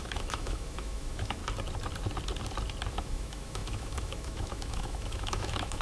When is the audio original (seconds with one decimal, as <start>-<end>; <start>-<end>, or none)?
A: 1.4-2.9